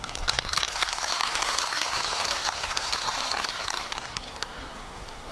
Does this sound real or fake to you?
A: fake